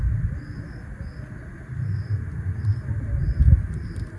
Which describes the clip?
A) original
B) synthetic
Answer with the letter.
A